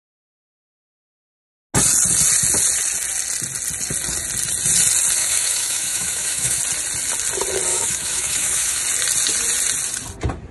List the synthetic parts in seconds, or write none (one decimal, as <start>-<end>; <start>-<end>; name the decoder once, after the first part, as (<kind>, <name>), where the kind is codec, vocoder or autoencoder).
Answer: 5.2-6.6 (autoencoder, DAC-VAE); 7.7-8.8